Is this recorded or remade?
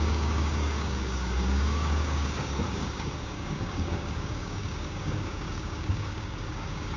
remade